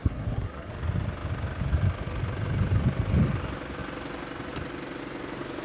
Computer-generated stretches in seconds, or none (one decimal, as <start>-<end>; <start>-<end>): 0.0-0.7